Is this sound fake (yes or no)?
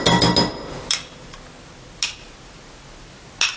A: no